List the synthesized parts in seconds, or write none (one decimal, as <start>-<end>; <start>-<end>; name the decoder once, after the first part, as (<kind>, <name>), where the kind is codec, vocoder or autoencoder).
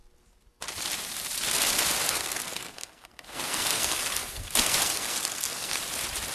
2.0-5.8 (codec, SNAC)